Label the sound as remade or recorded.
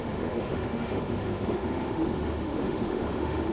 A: remade